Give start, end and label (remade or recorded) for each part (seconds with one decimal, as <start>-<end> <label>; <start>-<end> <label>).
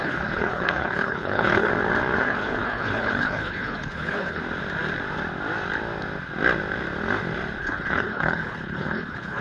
0.0-1.7 remade; 1.7-2.2 recorded; 2.2-4.4 remade; 4.4-7.6 recorded; 7.6-9.4 remade